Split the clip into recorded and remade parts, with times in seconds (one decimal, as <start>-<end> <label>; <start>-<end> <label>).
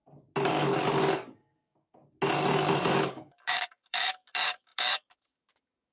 0.0-0.5 recorded; 0.5-2.0 remade; 2.0-2.7 recorded; 2.7-5.9 remade